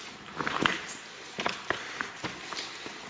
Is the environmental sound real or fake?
real